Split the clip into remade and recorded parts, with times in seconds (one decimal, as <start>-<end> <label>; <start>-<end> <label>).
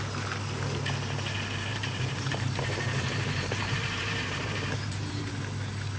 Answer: 0.0-1.7 recorded; 1.7-5.3 remade; 5.3-6.0 recorded